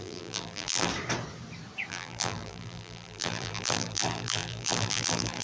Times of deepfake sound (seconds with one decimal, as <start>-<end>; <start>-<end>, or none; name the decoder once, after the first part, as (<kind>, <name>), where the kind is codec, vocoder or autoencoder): 0.0-0.9 (vocoder, BigVGAN v2); 1.9-5.4